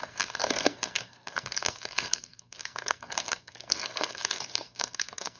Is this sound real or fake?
fake